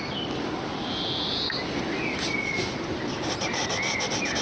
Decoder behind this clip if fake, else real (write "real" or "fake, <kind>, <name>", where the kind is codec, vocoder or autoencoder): real